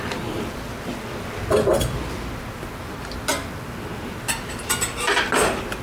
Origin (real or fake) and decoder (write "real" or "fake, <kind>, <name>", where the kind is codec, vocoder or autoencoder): real